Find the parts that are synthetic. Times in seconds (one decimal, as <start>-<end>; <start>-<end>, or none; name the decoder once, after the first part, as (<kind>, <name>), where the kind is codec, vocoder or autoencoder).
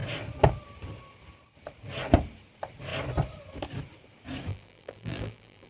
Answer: 4.5-5.7 (vocoder, BigVGAN v2)